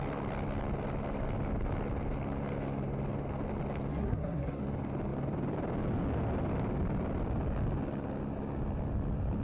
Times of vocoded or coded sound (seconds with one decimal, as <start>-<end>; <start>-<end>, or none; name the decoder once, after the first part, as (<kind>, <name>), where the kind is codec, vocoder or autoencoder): 3.9-4.6 (codec, SNAC)